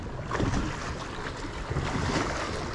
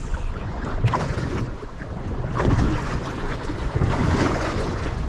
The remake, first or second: second